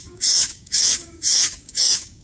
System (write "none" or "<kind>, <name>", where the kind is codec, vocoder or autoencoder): codec, DAC